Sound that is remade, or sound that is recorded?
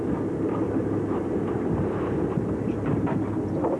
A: remade